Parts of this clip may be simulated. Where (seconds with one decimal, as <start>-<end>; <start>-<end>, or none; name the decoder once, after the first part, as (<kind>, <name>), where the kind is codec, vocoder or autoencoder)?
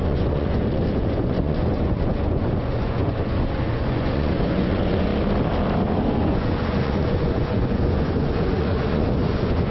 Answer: 0.0-5.1 (vocoder, Vocos); 6.1-9.7